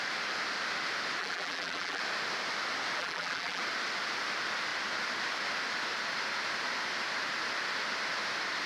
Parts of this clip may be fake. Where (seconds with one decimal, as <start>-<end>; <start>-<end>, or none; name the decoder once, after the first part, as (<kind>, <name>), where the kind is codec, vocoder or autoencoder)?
1.2-2.0 (vocoder, BigVGAN v2); 3.0-3.6